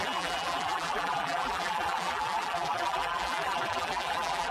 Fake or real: fake